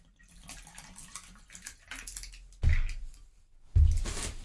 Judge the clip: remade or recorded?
recorded